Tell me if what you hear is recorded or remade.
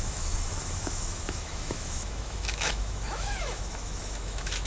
remade